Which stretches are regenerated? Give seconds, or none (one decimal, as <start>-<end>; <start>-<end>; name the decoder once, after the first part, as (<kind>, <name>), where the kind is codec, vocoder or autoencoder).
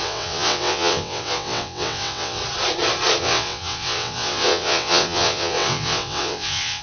0.0-2.4 (vocoder, WaveNeXt); 3.2-6.8